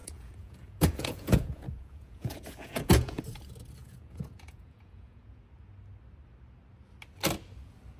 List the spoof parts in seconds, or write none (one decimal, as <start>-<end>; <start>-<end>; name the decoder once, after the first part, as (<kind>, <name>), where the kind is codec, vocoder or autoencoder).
0.0-3.2 (vocoder, Vocos); 3.8-5.4